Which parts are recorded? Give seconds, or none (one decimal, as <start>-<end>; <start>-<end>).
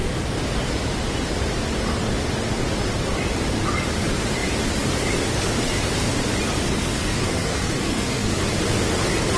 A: 0.0-6.7; 8.4-9.4